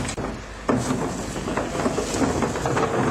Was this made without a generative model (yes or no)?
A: yes